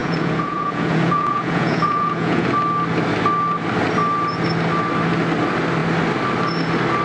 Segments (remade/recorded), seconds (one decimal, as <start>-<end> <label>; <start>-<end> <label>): 0.0-2.5 remade; 2.5-7.0 recorded

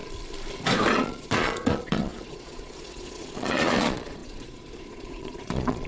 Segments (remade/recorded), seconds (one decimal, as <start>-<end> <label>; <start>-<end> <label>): 0.0-0.9 recorded; 0.9-5.9 remade

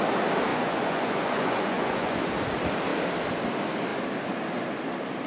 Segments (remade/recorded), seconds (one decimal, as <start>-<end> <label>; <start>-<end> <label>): 0.0-0.5 recorded; 0.5-2.2 remade; 2.2-5.3 recorded

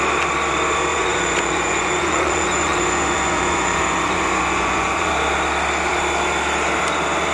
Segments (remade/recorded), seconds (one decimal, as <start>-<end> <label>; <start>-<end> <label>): 0.0-0.9 recorded; 0.9-5.1 remade; 5.1-7.3 recorded